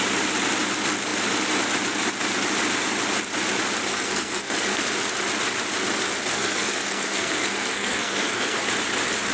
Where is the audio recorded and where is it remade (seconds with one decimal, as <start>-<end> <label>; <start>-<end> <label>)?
0.0-3.8 recorded; 3.8-4.8 remade; 4.8-6.3 recorded; 6.3-8.6 remade; 8.6-9.3 recorded